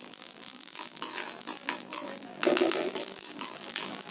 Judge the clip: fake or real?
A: fake